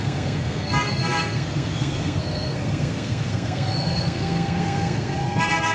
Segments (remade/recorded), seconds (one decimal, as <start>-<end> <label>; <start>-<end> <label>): 0.0-5.7 remade